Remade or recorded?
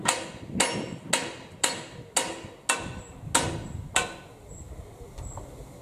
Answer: recorded